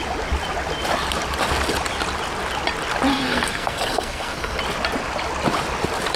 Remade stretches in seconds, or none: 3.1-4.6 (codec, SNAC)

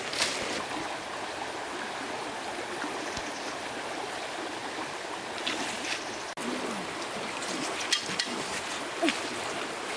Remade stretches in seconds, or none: none

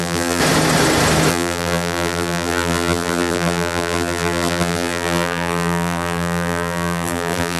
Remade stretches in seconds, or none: 0.0-0.4 (vocoder, BigVGAN v2); 1.3-7.6